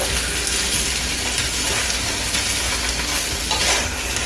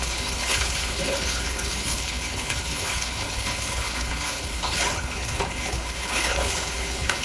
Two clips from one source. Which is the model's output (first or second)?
second